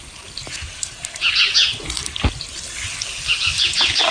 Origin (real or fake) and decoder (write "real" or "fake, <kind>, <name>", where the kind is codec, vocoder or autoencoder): real